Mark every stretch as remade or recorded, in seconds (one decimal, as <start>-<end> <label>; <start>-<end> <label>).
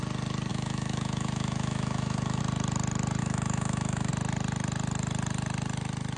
0.0-0.5 recorded; 0.5-2.4 remade; 2.4-3.2 recorded; 3.2-4.1 remade; 4.1-6.2 recorded